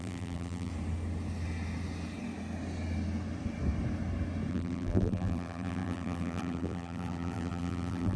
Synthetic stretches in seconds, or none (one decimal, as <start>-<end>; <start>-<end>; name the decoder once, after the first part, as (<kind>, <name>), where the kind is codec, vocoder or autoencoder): 0.0-0.7 (vocoder, BigVGAN v2); 4.5-8.2